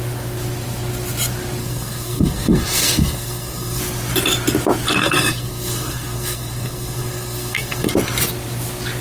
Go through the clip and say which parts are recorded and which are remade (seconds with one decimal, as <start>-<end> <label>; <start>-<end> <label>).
0.0-1.6 recorded; 1.6-3.8 remade; 3.8-5.0 recorded; 5.0-7.9 remade; 7.9-9.0 recorded

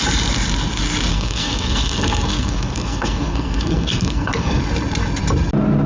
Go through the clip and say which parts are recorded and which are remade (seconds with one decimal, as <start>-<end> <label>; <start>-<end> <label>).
0.0-1.1 recorded; 1.1-4.6 remade; 4.6-5.9 recorded

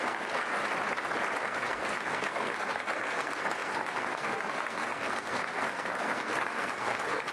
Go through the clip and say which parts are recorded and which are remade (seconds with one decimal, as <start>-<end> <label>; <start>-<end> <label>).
0.0-0.6 remade; 0.6-1.4 recorded; 1.4-7.3 remade

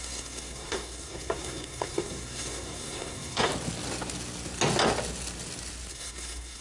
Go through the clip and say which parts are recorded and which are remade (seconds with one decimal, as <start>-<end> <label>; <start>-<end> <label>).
0.0-3.5 remade; 3.5-5.9 recorded; 5.9-6.6 remade

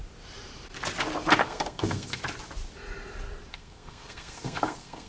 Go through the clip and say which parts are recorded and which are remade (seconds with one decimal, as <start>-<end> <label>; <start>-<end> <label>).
0.0-1.4 recorded; 1.4-2.2 remade; 2.2-3.5 recorded; 3.5-5.1 remade

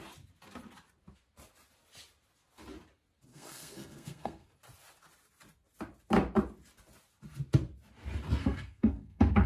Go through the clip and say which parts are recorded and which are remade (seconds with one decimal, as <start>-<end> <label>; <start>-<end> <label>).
0.0-3.3 recorded; 3.3-4.5 remade; 4.5-8.4 recorded; 8.4-9.5 remade

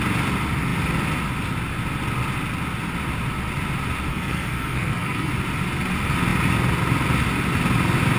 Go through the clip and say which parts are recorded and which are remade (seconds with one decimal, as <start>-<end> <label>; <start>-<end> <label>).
0.0-4.1 recorded; 4.1-5.3 remade; 5.3-8.2 recorded